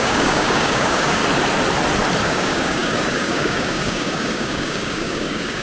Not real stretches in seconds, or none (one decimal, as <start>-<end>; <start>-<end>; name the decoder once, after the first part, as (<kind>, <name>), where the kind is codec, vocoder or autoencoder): 0.0-1.2 (codec, DAC); 2.2-5.6